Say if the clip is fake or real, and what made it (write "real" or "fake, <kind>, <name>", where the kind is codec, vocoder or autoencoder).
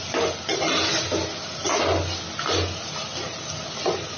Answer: real